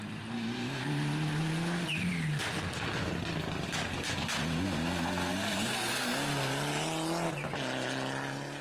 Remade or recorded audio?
recorded